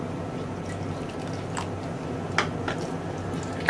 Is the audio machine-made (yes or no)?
no